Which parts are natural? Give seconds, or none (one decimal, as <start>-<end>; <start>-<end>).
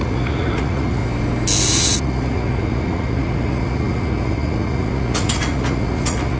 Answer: 1.0-1.7